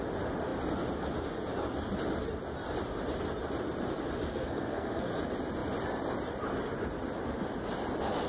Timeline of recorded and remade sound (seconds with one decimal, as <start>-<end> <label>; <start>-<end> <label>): 0.0-4.3 recorded; 4.3-5.1 remade; 5.1-8.3 recorded